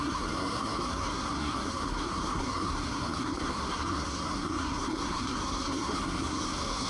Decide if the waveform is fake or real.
fake